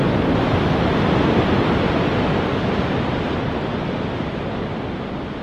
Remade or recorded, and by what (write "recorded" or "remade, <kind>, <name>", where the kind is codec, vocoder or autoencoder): recorded